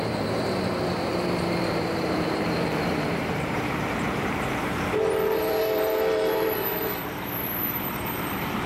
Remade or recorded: remade